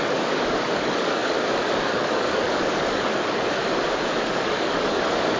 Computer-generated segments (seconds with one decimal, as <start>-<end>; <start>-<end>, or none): 0.0-3.6; 4.2-5.4